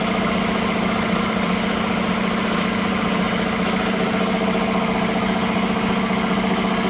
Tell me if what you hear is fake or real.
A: real